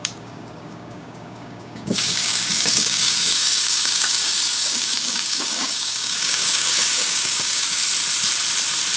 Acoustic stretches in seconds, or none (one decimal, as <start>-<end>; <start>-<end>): 7.8-9.0